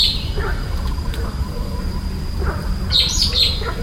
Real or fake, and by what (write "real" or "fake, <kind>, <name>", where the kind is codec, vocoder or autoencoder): fake, vocoder, BigVGAN v2